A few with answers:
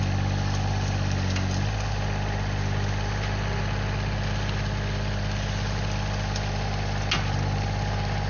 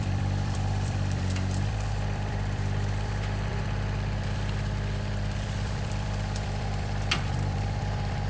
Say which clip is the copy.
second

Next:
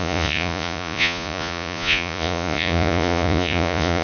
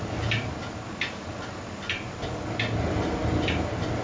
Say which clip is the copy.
first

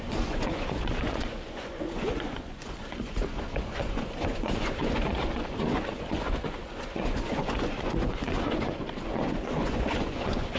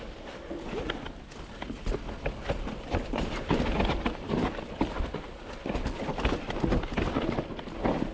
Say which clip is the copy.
first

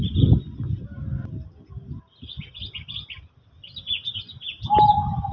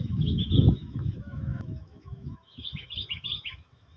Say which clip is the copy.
second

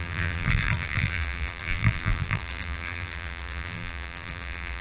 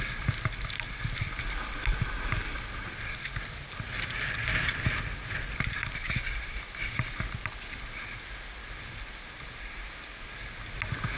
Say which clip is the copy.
first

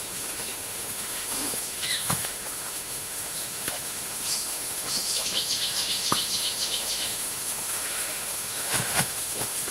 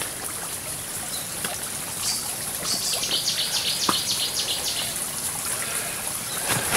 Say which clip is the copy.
first